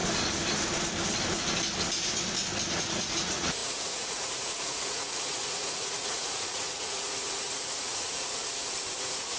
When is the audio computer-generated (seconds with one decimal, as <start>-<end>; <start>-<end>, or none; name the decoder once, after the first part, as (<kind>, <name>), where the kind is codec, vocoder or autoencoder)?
2.8-8.4 (vocoder, Vocos); 9.0-9.4